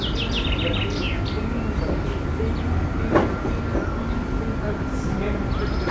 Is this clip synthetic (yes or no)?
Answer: no